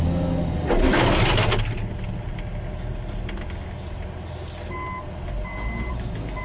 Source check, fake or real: real